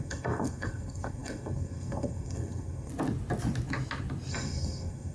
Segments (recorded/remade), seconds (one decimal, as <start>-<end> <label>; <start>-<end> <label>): 0.0-2.9 remade; 2.9-4.3 recorded; 4.3-5.1 remade